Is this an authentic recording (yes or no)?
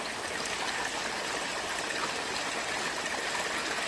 yes